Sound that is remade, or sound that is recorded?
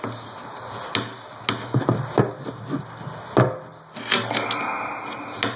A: recorded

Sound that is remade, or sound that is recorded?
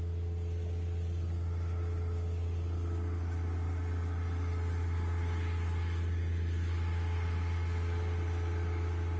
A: recorded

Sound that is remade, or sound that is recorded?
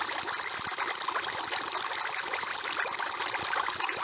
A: recorded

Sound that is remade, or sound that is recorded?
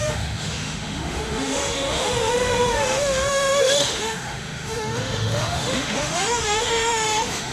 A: remade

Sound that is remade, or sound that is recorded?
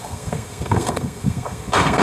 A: remade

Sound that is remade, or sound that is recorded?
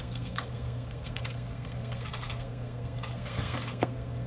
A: remade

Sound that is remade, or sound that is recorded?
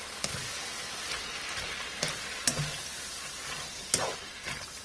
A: recorded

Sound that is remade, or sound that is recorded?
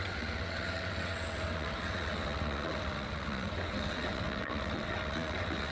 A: remade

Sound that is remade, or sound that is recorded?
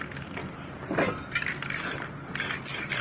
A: recorded